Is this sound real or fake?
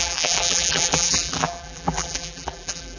fake